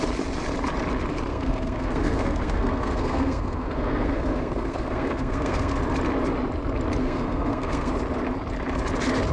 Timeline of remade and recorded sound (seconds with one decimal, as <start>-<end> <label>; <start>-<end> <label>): 0.0-1.3 recorded; 1.3-5.8 remade; 5.8-7.0 recorded; 7.0-7.9 remade; 7.9-9.3 recorded